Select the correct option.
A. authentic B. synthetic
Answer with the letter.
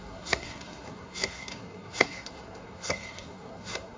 B